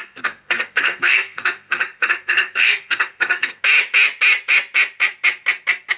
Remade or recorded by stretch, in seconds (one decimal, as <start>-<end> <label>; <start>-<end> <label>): 0.0-3.6 remade; 3.6-6.0 recorded